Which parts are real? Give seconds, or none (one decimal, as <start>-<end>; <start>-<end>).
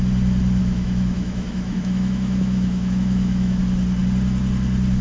0.0-0.6; 3.6-5.0